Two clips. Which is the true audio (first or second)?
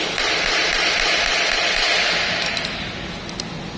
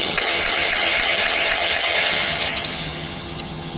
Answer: first